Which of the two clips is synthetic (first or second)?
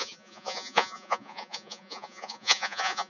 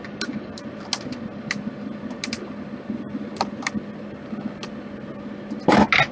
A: first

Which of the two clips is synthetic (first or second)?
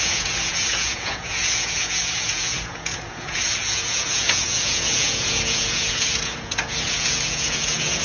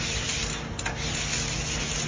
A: first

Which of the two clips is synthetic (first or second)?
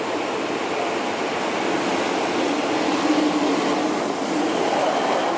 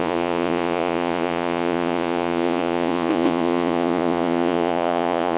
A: second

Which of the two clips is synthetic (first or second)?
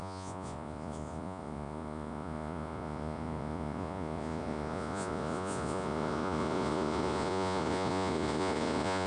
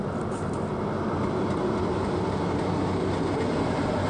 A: first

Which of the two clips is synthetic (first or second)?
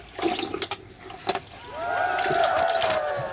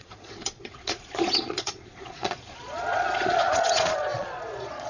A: second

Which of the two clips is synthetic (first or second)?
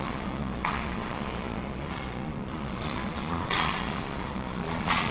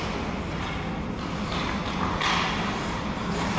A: first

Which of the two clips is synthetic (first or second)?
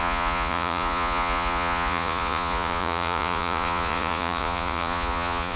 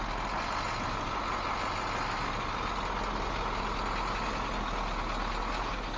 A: first